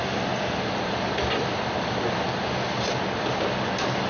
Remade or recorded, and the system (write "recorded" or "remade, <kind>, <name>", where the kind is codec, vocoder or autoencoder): recorded